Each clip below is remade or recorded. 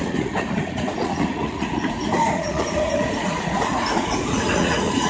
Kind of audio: remade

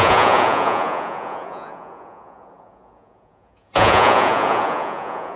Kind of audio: remade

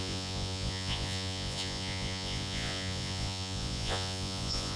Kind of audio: remade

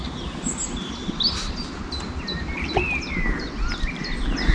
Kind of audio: recorded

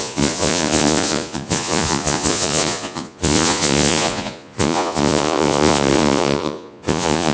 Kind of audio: remade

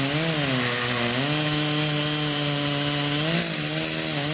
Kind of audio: recorded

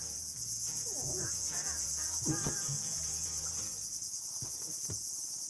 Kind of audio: remade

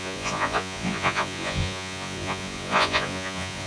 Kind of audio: remade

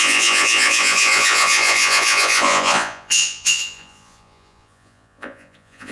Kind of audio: remade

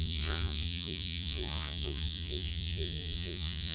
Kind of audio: remade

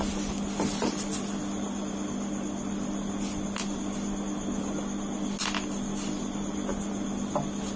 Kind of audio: recorded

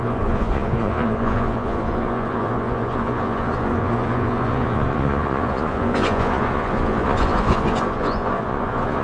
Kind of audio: remade